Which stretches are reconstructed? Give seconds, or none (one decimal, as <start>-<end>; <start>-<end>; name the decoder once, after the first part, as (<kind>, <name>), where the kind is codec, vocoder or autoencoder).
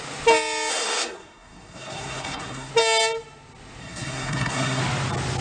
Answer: 0.7-2.7 (codec, SNAC); 3.8-4.8